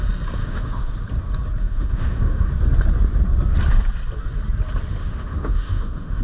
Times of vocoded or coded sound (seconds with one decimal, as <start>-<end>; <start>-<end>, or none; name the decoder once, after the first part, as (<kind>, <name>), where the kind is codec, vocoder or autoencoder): 0.4-0.9 (autoencoder, DAC-VAE); 1.6-2.5; 5.0-6.2